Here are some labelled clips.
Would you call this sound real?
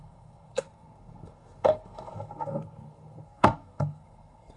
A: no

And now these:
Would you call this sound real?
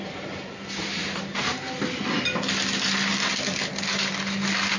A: yes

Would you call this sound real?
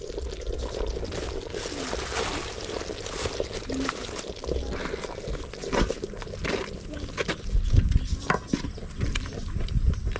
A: yes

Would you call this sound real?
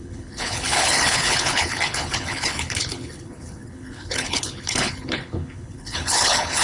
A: no